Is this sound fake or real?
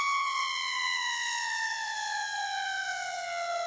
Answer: fake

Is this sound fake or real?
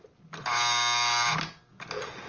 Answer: real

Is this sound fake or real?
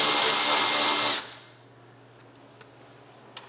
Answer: real